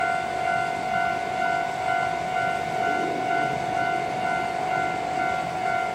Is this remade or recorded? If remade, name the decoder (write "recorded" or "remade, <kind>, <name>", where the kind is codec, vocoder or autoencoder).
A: recorded